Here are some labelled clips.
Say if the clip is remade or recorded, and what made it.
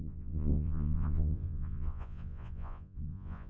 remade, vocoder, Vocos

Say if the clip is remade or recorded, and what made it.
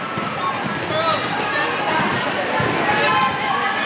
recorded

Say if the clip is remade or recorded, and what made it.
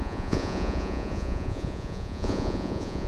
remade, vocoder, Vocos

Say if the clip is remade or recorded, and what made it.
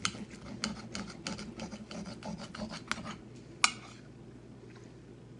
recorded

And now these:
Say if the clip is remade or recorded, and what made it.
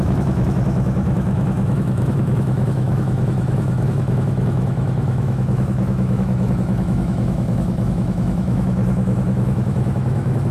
remade, autoencoder, DAC-VAE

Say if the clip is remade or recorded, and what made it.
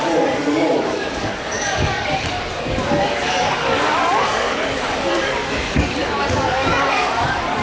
remade, codec, DAC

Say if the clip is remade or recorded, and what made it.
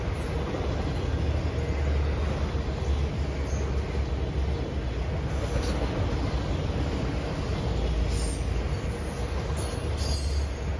recorded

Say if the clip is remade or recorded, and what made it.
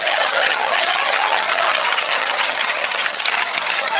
remade, vocoder, HiFi-GAN